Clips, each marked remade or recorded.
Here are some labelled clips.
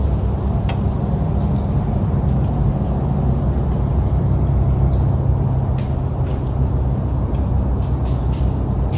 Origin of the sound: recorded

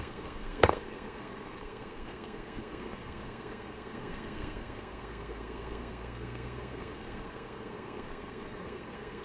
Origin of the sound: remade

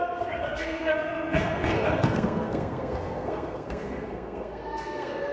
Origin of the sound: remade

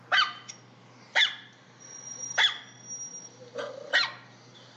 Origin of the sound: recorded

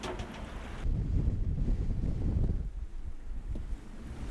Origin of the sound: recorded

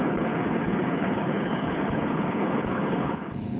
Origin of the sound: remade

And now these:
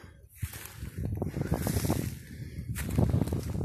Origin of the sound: recorded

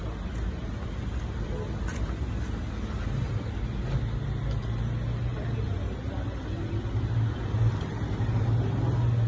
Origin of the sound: recorded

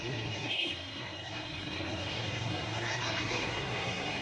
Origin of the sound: remade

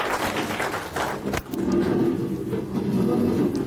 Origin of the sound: recorded